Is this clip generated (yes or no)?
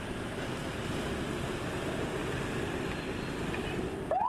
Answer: no